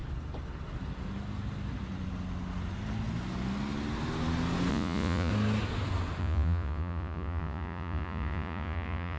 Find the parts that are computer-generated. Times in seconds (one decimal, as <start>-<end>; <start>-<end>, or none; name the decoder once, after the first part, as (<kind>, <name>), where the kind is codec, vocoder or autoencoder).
4.7-5.3 (vocoder, Vocos); 6.2-9.2